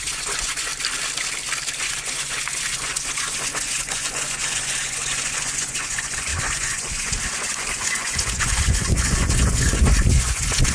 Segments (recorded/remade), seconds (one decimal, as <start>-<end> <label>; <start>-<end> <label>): 0.0-0.7 remade; 0.7-1.8 recorded; 1.8-10.7 remade